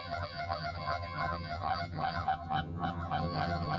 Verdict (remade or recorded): remade